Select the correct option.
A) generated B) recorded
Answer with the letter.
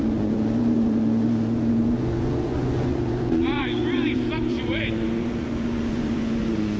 A